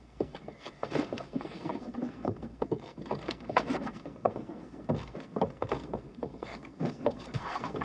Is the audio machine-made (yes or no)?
yes